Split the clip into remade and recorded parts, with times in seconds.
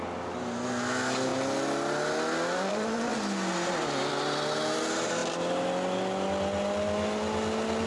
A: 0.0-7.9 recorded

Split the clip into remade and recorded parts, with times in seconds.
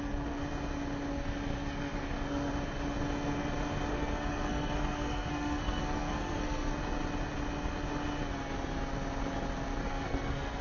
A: 0.0-0.4 remade; 0.4-1.1 recorded; 1.1-2.5 remade; 2.5-3.9 recorded; 3.9-6.7 remade; 6.7-9.8 recorded; 9.8-10.6 remade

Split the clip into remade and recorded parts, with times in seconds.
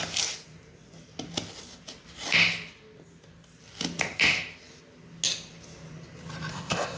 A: 0.0-6.5 recorded; 6.5-7.0 remade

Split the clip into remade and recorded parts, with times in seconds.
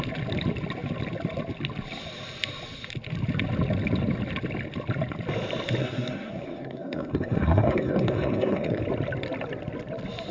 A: 0.0-5.8 recorded; 5.8-8.8 remade; 8.8-10.3 recorded